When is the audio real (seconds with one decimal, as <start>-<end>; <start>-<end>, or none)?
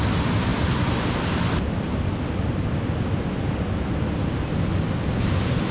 0.0-5.7